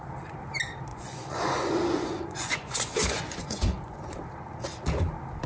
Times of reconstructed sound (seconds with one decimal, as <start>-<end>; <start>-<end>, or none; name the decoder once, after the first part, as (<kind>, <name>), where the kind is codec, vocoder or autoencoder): 0.9-4.2 (vocoder, Vocos)

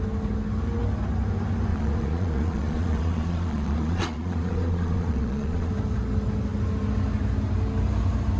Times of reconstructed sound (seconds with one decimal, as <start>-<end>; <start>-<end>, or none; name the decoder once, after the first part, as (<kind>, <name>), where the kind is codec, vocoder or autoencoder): 1.7-5.7 (vocoder, Vocos)

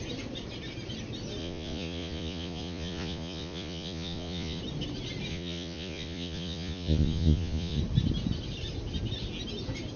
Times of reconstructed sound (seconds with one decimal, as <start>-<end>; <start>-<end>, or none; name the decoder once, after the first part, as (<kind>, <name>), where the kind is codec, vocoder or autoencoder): 1.4-4.6 (vocoder, Vocos); 5.3-7.8

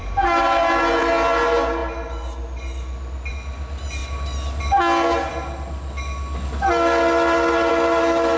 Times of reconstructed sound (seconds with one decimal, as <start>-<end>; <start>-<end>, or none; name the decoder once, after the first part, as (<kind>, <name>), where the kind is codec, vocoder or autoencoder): none

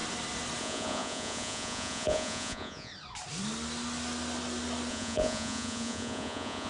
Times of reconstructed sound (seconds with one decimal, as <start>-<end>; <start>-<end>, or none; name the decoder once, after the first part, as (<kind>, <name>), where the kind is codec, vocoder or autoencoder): 0.6-2.9 (vocoder, Vocos); 4.9-6.7

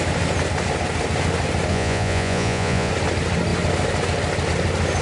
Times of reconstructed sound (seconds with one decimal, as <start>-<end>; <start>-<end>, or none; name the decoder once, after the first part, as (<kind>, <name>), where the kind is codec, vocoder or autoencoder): 1.7-2.9 (vocoder, Vocos)